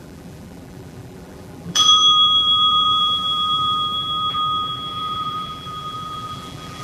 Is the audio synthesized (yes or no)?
yes